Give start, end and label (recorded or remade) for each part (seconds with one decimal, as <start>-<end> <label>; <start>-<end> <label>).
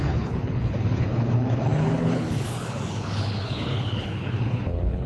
0.0-5.1 remade